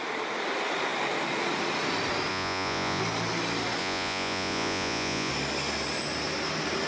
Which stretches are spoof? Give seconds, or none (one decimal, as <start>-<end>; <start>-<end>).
2.3-3.0; 3.8-5.3